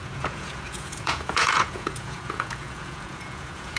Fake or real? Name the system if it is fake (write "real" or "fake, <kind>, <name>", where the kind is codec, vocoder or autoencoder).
fake, vocoder, Vocos